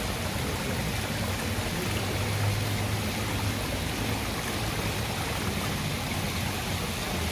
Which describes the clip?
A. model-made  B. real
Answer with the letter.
B